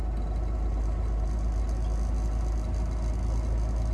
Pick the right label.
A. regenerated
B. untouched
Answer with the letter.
B